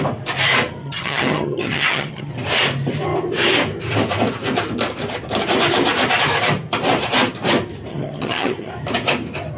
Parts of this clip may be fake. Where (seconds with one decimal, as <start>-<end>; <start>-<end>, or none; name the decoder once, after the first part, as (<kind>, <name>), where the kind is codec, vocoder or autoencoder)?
0.8-2.3 (vocoder, HiFi-GAN); 7.9-8.7